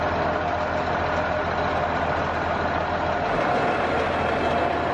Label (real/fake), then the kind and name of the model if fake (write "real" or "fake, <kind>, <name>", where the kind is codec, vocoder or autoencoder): real